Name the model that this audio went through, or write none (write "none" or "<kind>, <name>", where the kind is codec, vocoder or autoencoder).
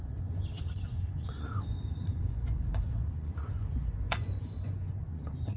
vocoder, Vocos